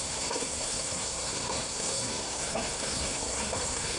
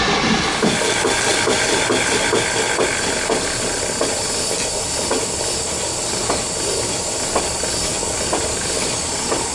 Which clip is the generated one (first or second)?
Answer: first